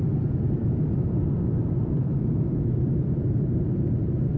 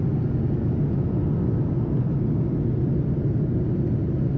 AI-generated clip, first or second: first